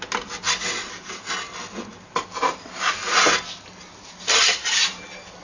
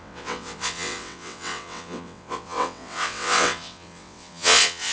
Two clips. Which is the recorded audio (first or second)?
first